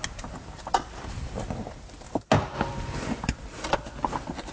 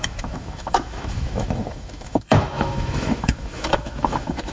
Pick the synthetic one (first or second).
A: second